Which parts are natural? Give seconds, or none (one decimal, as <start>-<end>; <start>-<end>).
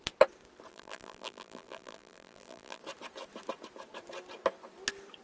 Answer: 0.0-0.7; 2.8-5.2